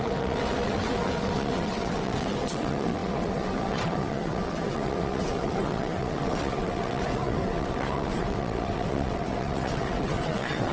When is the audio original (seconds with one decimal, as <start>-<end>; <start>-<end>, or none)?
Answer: none